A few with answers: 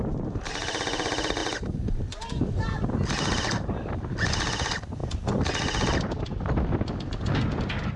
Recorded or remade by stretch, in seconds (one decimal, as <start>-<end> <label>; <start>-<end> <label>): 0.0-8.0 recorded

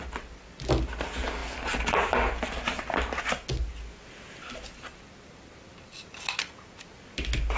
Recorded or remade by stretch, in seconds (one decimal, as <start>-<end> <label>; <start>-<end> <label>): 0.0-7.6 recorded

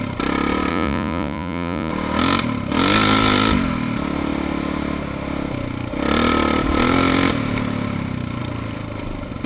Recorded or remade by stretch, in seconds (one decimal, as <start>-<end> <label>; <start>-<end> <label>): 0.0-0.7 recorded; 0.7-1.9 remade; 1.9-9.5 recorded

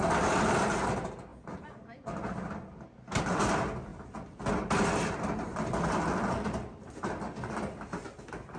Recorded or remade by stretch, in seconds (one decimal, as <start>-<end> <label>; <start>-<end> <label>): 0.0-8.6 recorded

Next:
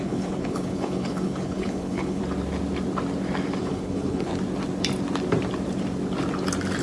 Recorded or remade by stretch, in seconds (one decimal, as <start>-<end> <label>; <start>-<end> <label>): 0.0-2.2 remade; 2.2-3.6 recorded; 3.6-4.3 remade; 4.3-6.8 recorded